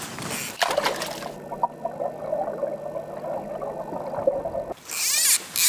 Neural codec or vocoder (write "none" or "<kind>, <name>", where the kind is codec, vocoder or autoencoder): none